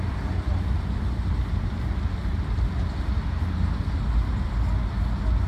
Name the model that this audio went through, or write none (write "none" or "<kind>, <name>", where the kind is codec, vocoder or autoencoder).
none